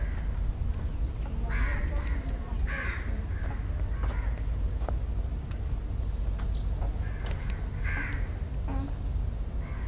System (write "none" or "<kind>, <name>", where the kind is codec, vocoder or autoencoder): none